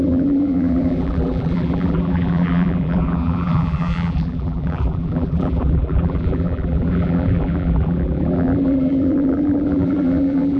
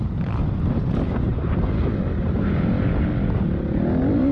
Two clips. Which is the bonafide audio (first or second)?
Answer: second